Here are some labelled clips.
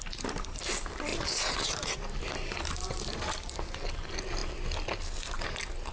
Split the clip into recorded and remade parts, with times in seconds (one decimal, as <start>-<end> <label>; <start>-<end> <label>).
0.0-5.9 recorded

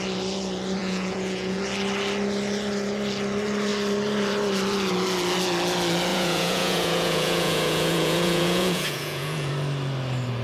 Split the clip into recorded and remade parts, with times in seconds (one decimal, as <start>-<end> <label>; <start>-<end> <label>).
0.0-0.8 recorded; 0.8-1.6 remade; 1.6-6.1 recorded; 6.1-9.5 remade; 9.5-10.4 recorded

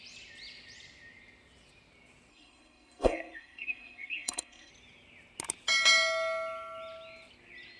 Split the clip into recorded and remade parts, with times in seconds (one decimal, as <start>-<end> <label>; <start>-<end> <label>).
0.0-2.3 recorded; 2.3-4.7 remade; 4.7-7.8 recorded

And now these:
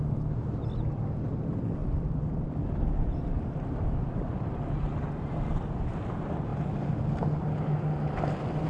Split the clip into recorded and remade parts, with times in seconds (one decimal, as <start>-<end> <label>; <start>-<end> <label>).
0.0-1.8 recorded; 1.8-6.1 remade; 6.1-8.7 recorded

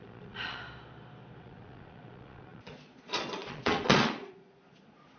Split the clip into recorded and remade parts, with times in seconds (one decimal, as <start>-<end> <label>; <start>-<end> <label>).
0.0-0.6 remade; 0.6-1.4 recorded; 1.4-5.2 remade